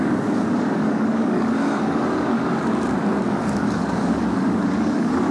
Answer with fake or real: fake